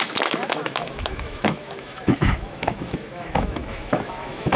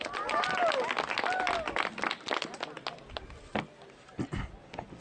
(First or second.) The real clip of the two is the second